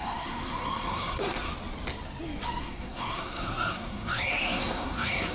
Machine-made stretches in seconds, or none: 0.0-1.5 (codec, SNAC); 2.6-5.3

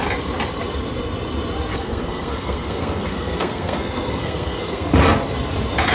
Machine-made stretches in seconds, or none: 1.7-4.9 (codec, SNAC)

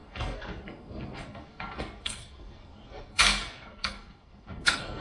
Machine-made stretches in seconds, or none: 0.0-5.0 (codec, SNAC)

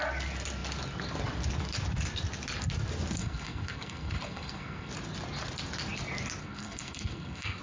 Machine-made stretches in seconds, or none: 3.2-4.9 (codec, SNAC); 6.4-7.6

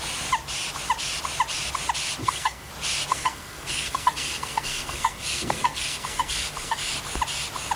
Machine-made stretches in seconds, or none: 2.2-2.7 (codec, SNAC); 3.1-6.9

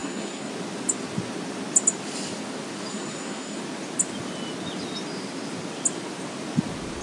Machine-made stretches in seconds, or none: 0.0-0.5 (codec, SNAC); 2.9-3.6

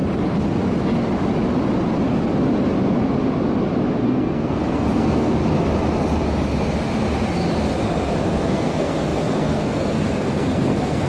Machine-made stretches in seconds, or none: 4.0-5.4 (codec, SNAC); 8.2-11.1